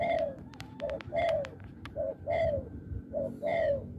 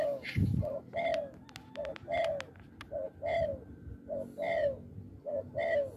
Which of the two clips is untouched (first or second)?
second